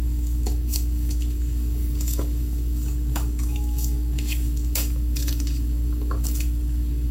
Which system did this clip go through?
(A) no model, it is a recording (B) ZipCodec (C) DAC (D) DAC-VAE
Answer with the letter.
C